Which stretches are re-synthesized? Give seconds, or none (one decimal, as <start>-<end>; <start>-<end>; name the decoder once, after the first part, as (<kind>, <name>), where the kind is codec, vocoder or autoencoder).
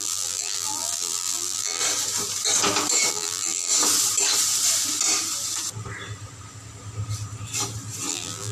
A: 0.0-1.8 (vocoder, BigVGAN v2); 3.1-3.7; 8.1-8.5